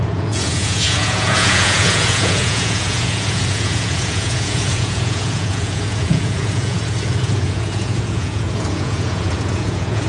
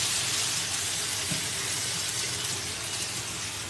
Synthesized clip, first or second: first